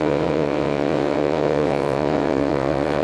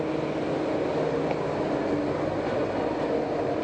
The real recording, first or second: second